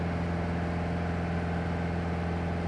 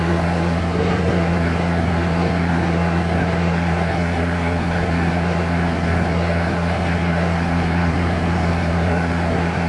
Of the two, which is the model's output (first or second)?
second